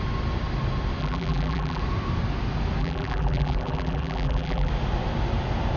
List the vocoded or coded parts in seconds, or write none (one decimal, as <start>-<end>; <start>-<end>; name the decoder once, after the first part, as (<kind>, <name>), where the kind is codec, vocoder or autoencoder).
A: 1.0-1.8 (vocoder, BigVGAN v2); 2.8-4.7